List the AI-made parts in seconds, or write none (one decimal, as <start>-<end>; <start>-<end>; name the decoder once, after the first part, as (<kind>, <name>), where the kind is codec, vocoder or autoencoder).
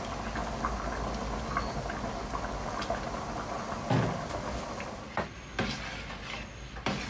none